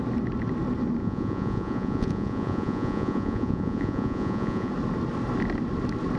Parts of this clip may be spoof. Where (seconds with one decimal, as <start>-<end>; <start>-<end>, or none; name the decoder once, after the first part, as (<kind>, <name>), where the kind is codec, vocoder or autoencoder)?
1.0-4.7 (vocoder, Vocos)